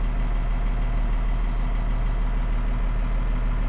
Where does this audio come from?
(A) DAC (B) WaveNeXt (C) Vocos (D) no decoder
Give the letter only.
D